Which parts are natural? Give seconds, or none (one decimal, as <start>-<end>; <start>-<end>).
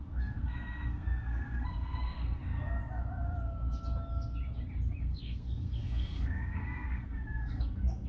2.4-5.0